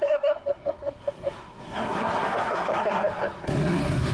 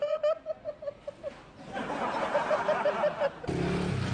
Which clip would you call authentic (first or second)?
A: second